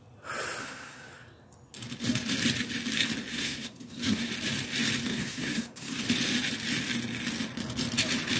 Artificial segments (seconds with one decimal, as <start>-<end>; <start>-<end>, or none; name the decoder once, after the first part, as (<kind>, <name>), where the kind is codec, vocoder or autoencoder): 0.6-1.1 (codec, SNAC); 3.3-4.3; 5.1-6.0